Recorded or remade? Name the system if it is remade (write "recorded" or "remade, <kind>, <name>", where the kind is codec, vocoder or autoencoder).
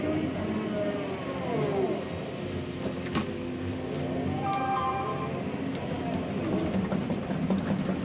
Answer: recorded